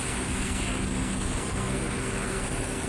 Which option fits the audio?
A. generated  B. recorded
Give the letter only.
A